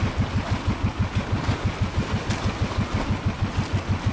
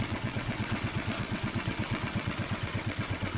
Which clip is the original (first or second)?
first